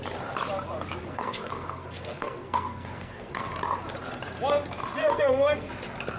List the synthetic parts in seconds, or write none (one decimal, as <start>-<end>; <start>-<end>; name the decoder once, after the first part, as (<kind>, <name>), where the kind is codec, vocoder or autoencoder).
1.0-3.5 (codec, SNAC); 5.0-5.7